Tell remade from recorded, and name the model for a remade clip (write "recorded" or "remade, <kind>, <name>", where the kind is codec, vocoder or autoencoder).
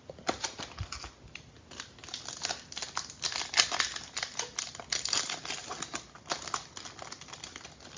recorded